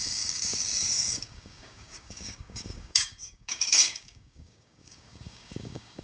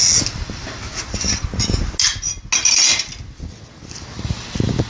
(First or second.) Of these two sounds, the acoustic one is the second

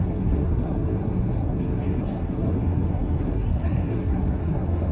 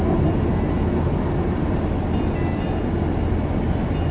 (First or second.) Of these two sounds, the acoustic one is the second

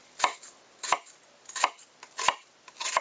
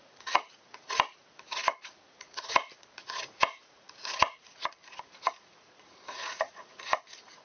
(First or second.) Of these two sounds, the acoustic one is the first